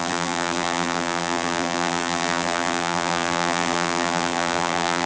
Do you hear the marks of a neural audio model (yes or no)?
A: yes